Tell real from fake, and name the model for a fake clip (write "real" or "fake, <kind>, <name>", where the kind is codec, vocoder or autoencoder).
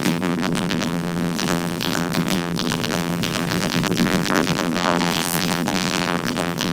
fake, vocoder, BigVGAN v2